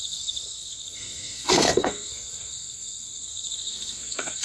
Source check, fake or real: fake